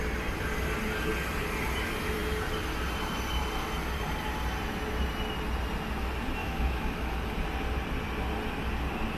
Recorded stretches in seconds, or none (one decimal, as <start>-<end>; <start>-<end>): 0.0-6.4; 7.1-9.2